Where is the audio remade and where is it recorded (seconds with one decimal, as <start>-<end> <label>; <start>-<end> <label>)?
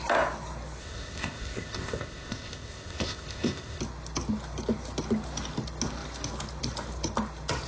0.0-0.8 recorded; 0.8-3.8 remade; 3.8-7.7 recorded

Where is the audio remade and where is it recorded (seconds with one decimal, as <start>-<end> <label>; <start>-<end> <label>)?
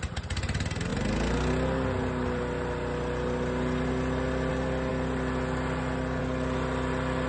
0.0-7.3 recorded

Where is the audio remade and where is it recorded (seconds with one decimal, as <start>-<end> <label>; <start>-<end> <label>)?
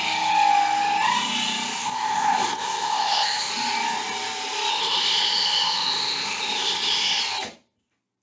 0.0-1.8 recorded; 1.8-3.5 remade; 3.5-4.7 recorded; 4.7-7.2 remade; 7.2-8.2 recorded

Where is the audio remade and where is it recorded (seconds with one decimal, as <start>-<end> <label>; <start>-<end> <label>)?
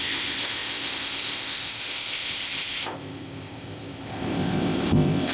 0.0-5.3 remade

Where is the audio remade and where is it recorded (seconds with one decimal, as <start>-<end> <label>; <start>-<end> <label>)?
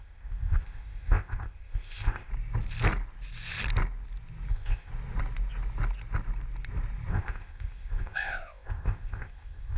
0.0-2.3 remade; 2.3-4.5 recorded; 4.5-4.9 remade; 4.9-7.1 recorded; 7.1-9.8 remade